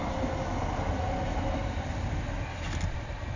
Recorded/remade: recorded